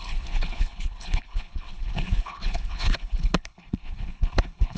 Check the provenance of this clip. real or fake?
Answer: fake